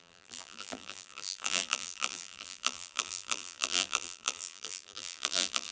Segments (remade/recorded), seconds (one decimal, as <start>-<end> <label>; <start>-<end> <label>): 0.0-5.7 remade